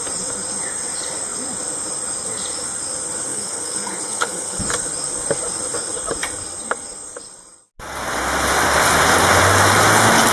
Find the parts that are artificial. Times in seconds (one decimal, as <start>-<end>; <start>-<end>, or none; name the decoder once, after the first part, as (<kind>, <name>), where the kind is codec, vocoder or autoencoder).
3.3-4.6 (codec, HILCodec)